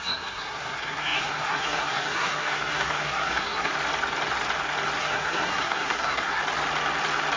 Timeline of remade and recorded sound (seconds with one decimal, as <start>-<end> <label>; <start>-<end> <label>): 0.0-3.7 remade; 3.7-5.0 recorded; 5.0-6.4 remade; 6.4-7.4 recorded